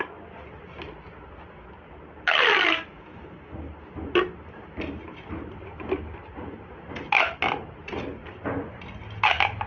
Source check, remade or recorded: recorded